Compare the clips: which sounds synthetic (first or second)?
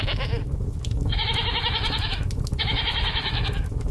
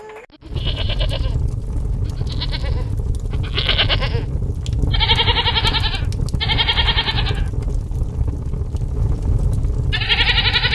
first